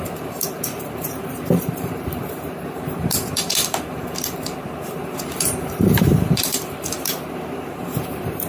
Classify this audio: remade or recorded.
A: remade